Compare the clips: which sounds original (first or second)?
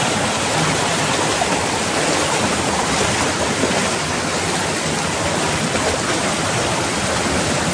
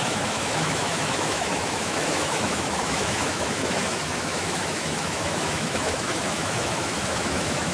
first